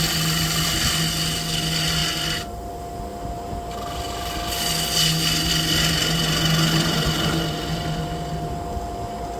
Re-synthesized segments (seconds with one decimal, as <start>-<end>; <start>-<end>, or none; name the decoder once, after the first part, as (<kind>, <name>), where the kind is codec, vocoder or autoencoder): none